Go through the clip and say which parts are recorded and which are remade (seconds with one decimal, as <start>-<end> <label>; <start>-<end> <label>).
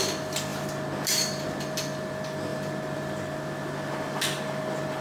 0.0-5.0 recorded